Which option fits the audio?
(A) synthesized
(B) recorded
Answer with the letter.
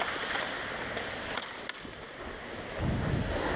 B